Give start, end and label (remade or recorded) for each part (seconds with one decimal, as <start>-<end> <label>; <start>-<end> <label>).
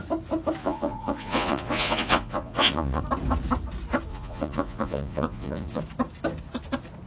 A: 0.0-0.6 recorded; 0.6-3.0 remade; 3.0-4.1 recorded; 4.1-5.8 remade; 5.8-7.1 recorded